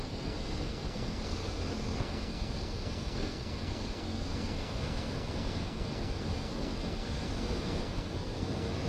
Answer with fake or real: fake